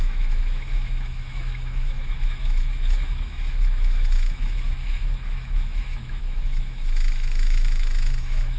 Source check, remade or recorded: remade